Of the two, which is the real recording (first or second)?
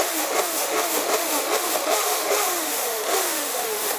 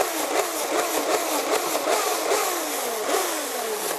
second